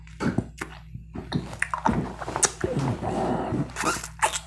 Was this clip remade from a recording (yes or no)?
no